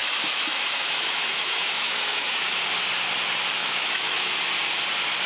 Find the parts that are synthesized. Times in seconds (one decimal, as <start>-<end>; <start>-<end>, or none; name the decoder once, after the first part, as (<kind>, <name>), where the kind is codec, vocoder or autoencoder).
0.0-2.6 (autoencoder, DAC-VAE); 3.6-4.3